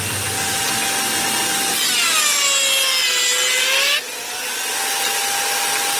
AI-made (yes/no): no